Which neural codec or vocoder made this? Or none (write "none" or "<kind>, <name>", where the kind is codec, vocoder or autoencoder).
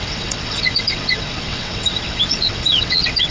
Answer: vocoder, WaveNeXt